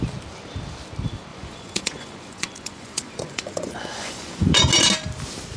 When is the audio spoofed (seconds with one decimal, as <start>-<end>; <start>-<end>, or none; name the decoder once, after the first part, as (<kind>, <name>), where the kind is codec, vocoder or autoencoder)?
1.3-4.7 (vocoder, Vocos)